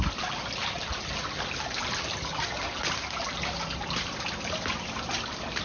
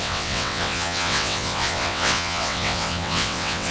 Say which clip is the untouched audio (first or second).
first